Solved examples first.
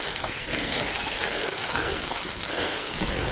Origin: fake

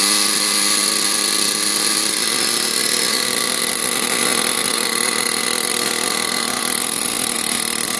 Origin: real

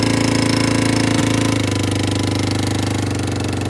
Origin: real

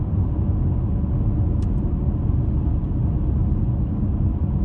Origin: real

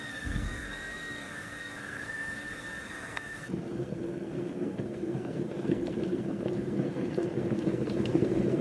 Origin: fake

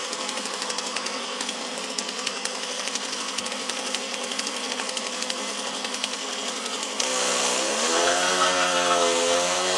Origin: fake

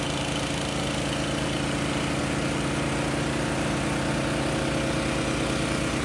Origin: real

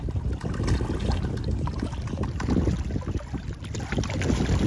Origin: real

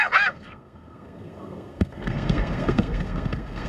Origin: fake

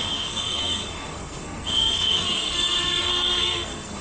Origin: fake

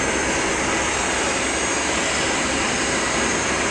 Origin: real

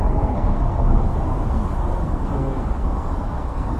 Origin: fake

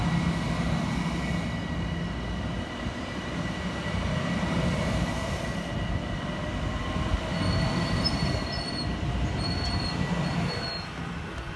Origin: real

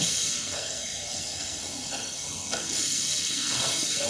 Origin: fake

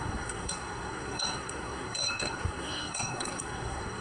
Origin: fake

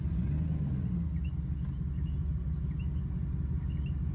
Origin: real